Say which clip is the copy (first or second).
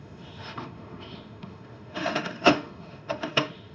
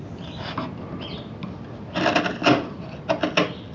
first